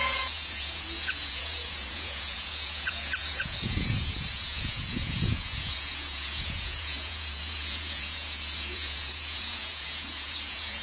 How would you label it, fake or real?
fake